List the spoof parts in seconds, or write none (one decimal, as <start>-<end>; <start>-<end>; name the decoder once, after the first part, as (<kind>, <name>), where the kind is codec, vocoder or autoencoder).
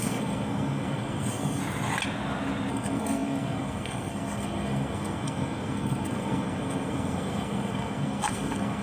0.0-1.6 (codec, SNAC); 2.7-8.8